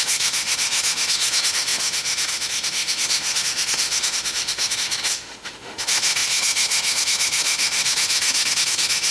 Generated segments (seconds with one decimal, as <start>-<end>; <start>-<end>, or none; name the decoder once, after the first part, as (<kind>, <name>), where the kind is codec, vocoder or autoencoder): 0.0-9.1 (autoencoder, DAC-VAE)